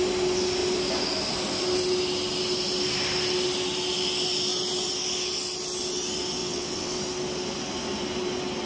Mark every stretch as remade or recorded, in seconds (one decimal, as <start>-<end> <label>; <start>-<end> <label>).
0.0-6.4 recorded; 6.4-7.0 remade; 7.0-8.7 recorded